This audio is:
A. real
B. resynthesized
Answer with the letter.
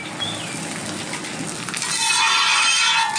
A